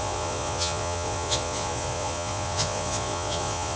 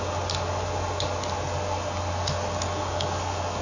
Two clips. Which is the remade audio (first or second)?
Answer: first